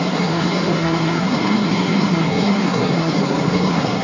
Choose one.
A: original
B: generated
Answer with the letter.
B